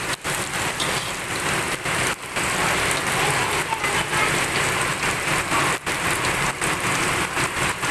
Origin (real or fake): real